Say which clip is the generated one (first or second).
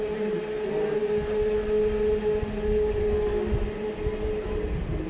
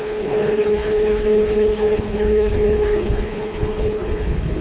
second